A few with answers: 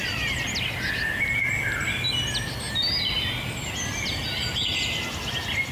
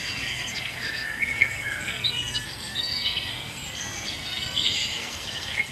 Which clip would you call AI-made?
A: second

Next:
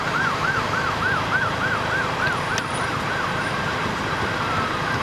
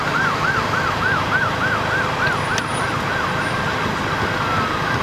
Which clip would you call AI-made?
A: first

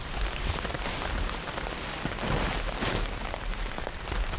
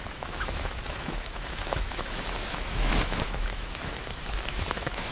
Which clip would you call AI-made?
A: second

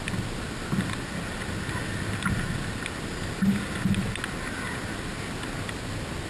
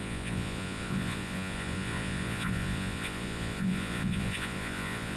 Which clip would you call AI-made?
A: second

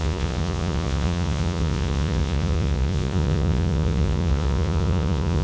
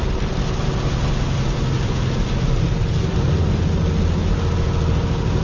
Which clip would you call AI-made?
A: first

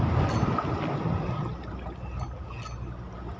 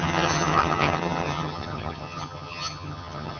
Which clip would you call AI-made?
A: second